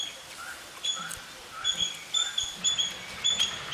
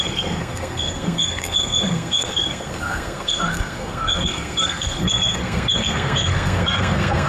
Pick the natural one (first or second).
first